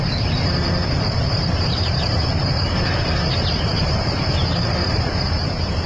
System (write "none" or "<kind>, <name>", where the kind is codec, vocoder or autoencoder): vocoder, BigVGAN v2